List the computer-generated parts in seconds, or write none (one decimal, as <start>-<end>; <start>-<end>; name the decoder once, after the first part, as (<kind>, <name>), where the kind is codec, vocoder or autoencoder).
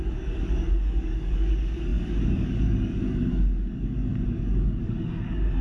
0.0-5.6 (codec, DAC)